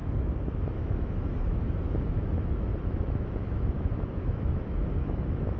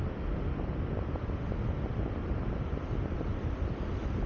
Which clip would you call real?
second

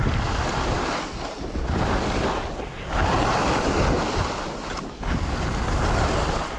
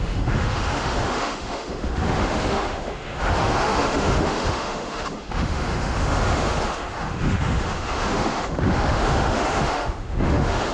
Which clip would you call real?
first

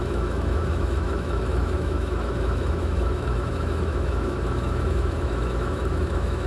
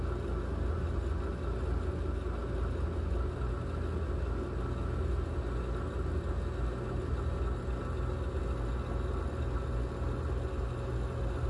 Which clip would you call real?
second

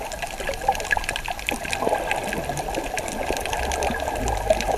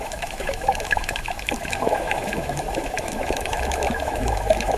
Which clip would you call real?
first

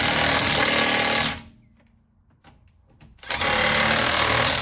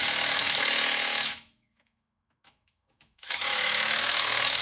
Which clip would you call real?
first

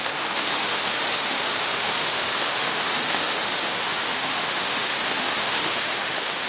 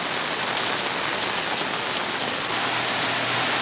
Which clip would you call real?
second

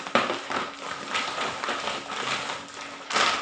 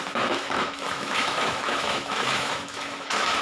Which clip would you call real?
first